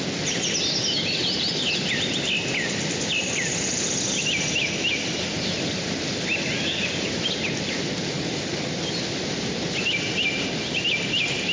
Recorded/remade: recorded